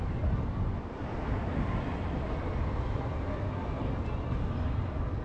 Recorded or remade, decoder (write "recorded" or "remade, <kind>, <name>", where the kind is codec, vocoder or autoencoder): recorded